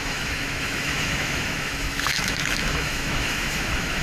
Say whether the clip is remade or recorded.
remade